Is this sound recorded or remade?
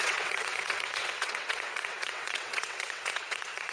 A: remade